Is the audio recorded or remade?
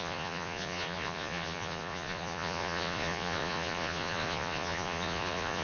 remade